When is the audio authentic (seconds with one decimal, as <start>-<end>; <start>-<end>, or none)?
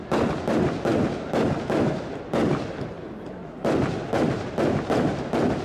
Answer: 0.0-5.6